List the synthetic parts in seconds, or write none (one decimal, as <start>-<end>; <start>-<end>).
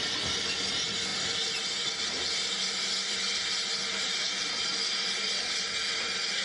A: none